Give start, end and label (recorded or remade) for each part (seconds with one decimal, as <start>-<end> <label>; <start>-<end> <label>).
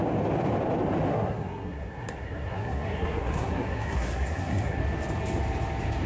0.0-1.1 recorded; 1.1-4.8 remade; 4.8-6.1 recorded